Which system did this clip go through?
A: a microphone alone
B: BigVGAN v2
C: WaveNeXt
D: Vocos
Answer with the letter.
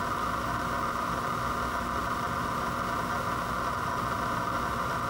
A